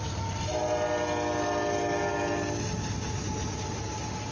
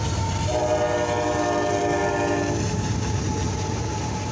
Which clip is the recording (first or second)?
first